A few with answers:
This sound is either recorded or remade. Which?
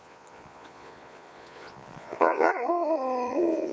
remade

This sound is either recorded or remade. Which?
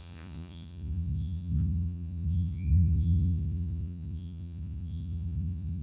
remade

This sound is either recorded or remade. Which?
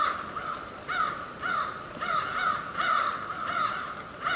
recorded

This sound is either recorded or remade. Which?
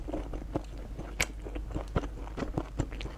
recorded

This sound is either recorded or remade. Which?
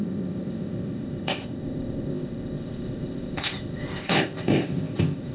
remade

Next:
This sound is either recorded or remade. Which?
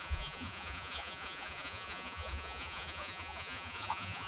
remade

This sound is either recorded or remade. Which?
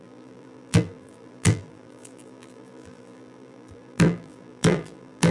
remade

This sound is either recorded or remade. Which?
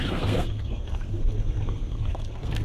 remade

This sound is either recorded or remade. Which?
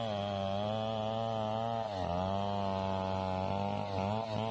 recorded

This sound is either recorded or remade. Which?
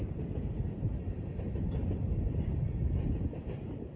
remade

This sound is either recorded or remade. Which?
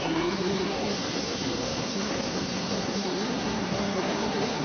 remade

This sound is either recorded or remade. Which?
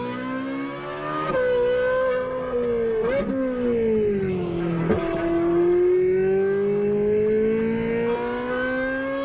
recorded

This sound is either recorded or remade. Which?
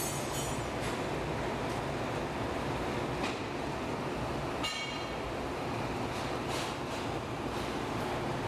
recorded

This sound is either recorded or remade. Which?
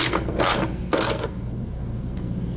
remade